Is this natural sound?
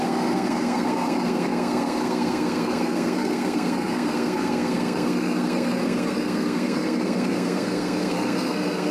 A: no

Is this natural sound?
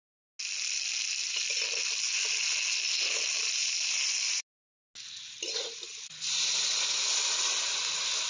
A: yes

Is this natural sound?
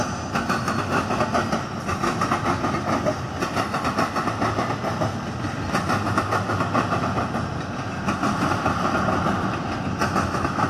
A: yes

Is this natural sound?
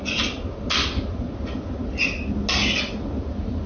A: yes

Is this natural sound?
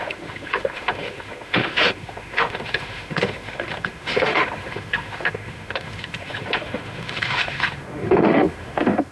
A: no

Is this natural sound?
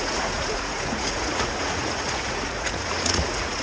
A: no